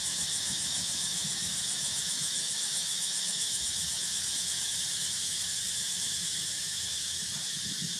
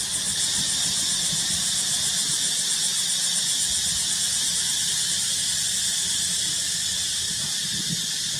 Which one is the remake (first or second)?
first